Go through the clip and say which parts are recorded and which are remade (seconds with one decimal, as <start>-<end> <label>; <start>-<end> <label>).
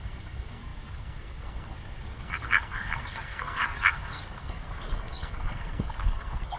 0.0-6.6 remade